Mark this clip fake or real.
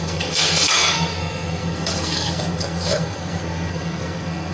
fake